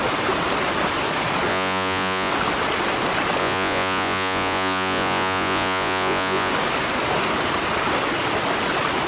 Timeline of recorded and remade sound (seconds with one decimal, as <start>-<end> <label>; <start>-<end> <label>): 0.0-1.5 recorded; 1.5-2.3 remade; 2.3-3.4 recorded; 3.4-6.5 remade; 6.5-9.1 recorded